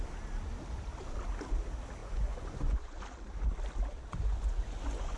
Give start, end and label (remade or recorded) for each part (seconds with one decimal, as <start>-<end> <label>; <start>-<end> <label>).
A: 0.0-2.0 recorded; 2.0-3.0 remade; 3.0-4.2 recorded; 4.2-5.2 remade